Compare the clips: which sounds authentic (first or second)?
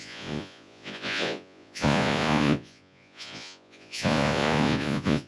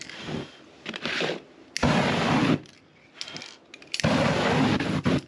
second